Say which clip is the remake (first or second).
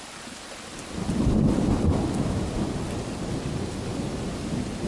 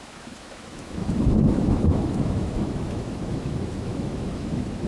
second